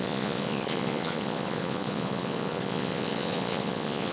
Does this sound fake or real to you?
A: fake